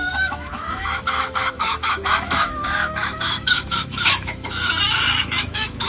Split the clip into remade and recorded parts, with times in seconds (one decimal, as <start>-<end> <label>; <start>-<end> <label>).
0.0-4.7 remade; 4.7-5.2 recorded; 5.2-5.9 remade